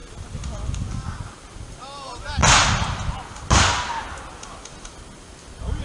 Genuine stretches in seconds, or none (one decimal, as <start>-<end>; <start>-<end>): 0.0-5.8